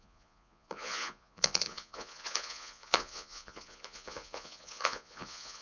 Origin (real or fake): fake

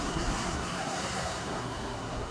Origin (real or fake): fake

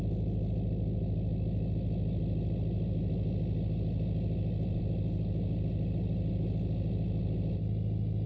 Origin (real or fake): real